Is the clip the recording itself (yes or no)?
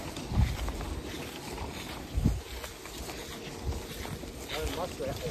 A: yes